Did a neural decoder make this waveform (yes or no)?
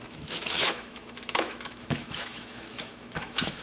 yes